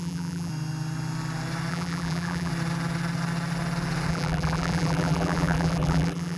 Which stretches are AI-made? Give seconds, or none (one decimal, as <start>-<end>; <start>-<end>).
0.0-0.5; 1.7-2.5; 4.1-6.4